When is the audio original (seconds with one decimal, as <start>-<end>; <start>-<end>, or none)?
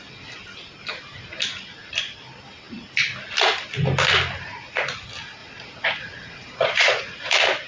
0.0-4.5; 5.0-5.4; 7.3-7.7